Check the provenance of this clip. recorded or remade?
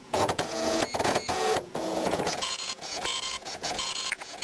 remade